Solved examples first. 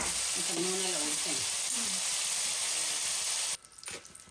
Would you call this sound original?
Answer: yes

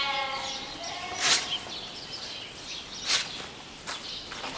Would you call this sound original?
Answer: yes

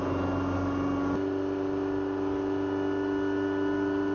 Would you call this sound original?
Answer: yes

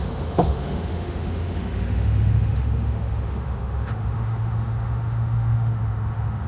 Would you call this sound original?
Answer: no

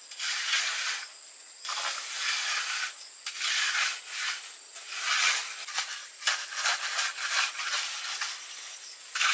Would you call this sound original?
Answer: yes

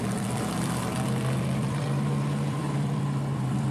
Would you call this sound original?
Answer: no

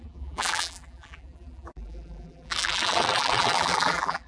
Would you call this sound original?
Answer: no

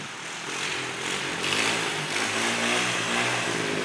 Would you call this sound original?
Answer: yes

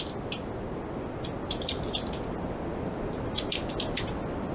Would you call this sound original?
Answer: yes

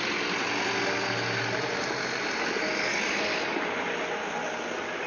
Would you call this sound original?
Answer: yes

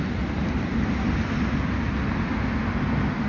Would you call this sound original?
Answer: yes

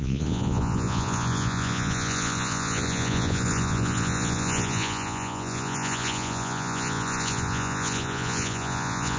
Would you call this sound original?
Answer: no